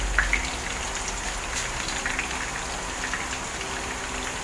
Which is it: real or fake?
real